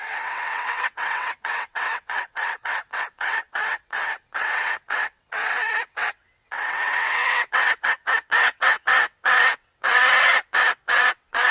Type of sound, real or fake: fake